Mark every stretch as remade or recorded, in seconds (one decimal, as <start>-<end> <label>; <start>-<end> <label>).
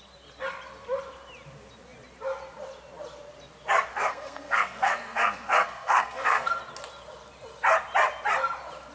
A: 0.0-3.9 recorded; 3.9-6.5 remade; 6.5-8.9 recorded